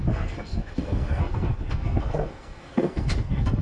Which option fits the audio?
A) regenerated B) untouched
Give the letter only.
A